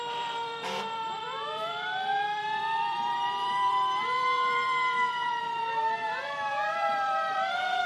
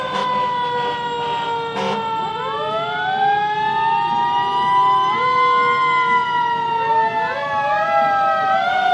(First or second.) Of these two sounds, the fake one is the first